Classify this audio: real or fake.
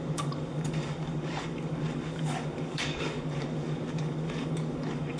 fake